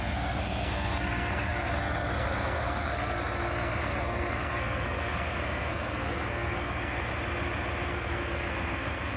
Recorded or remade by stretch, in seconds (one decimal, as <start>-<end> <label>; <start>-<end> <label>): 0.0-7.1 remade; 7.1-7.9 recorded; 7.9-9.2 remade